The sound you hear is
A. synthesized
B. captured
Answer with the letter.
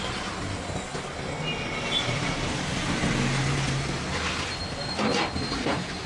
B